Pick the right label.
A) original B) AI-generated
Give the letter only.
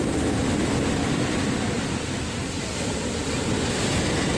A